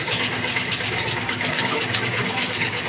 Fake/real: fake